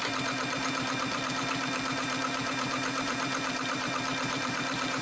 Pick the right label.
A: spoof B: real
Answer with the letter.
A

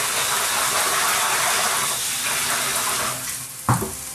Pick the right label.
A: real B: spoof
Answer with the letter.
A